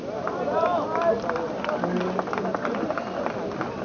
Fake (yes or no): no